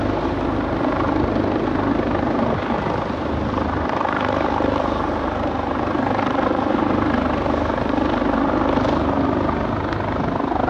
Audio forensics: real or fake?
real